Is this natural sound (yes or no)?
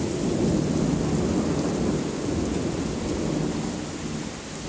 yes